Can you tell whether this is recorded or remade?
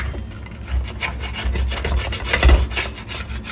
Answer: recorded